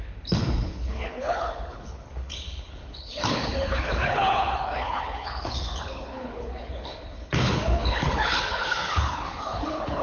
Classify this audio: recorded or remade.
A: remade